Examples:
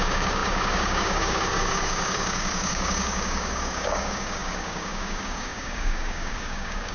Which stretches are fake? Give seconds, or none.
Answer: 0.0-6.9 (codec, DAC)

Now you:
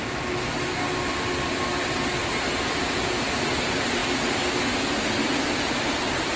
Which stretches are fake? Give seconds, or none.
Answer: none

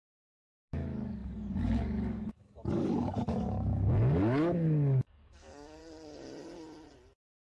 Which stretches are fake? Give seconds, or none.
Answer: 0.0-5.8 (codec, DAC)

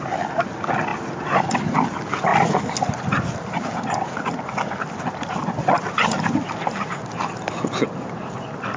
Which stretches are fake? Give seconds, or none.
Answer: none

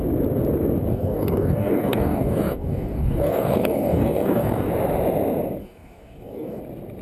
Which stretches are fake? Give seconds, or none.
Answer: 0.9-4.7 (codec, DAC); 5.6-6.6

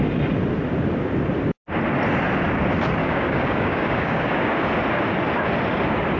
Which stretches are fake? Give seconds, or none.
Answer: 3.0-4.7 (codec, DAC)